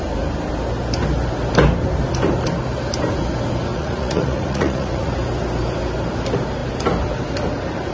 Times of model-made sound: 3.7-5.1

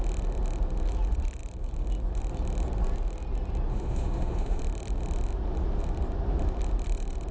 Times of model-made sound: 3.7-4.6

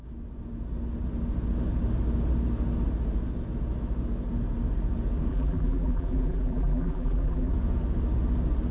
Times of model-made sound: 5.3-7.5

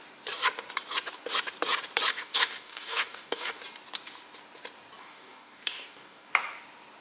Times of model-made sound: 2.1-3.6; 5.0-6.3